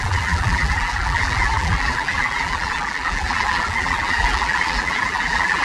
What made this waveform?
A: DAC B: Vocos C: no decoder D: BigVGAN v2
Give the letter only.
D